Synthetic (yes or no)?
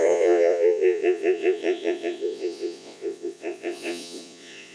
yes